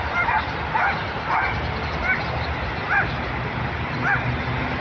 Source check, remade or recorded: recorded